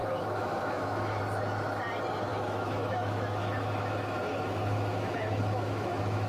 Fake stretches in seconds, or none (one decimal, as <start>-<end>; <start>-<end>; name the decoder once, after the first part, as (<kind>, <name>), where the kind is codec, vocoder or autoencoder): 0.0-1.2 (autoencoder, DAC-VAE); 2.3-6.3